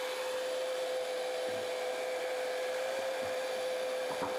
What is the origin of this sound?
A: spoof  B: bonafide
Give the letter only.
B